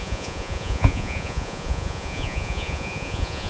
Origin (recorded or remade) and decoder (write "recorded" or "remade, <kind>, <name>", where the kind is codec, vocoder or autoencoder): remade, vocoder, Vocos